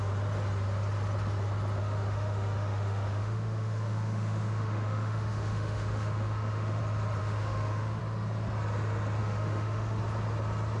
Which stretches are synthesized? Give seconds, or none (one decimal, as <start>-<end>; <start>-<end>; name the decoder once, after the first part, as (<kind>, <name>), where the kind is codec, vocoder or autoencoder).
1.8-6.8 (autoencoder, DAC-VAE); 7.2-8.0; 9.2-10.0